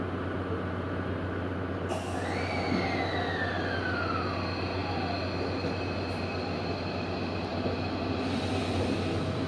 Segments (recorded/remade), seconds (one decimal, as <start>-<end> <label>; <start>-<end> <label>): 0.0-9.5 recorded